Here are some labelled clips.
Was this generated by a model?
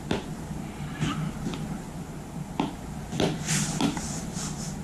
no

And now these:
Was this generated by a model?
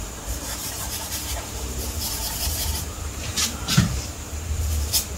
yes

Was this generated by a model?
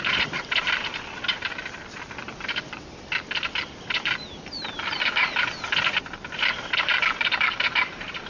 yes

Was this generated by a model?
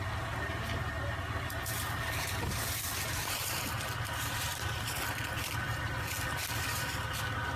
no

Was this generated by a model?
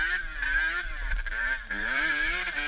yes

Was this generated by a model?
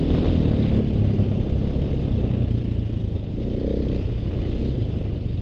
no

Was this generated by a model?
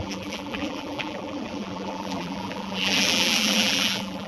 yes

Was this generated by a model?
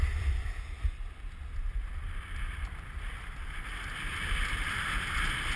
yes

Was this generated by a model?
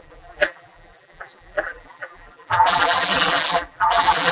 yes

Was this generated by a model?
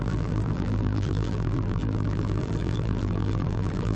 yes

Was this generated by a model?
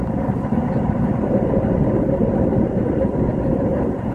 yes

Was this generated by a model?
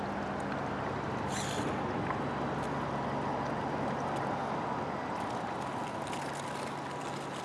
no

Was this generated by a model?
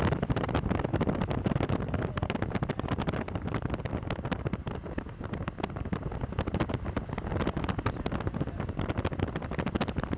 yes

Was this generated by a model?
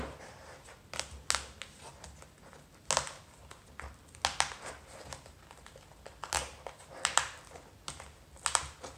no